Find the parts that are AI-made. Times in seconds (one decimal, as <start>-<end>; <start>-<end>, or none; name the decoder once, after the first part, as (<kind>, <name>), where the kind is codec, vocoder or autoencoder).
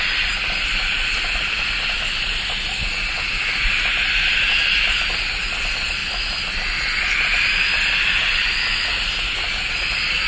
none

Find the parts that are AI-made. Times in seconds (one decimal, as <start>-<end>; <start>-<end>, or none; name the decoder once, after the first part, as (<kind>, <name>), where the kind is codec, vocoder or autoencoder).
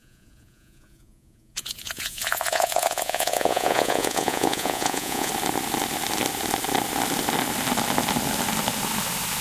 0.0-5.3 (vocoder, Vocos)